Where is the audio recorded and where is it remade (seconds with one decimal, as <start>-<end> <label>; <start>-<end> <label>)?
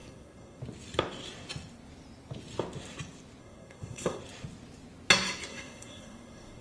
0.0-0.6 remade; 0.6-3.4 recorded; 3.4-4.2 remade; 4.2-5.5 recorded; 5.5-6.6 remade